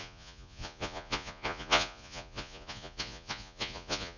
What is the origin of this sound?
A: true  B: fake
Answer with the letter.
B